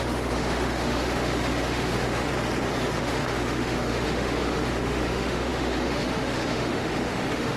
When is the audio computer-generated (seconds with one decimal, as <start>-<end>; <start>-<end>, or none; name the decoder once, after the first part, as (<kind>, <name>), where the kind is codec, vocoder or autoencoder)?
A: 0.0-2.3 (autoencoder, DAC-VAE); 3.0-7.6